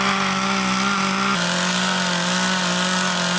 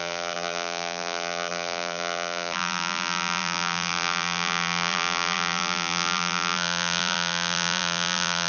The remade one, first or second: second